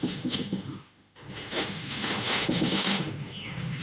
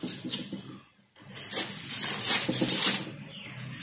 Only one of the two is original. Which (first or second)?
second